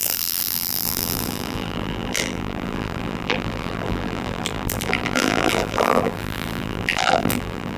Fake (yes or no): yes